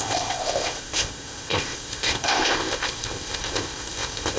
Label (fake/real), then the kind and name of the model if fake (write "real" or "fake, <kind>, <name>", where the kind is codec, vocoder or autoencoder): fake, codec, ZipCodec